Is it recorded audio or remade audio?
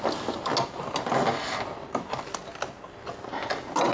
recorded